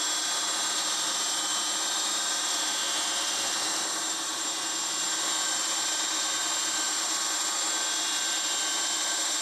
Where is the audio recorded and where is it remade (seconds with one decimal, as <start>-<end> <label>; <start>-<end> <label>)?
0.0-9.4 recorded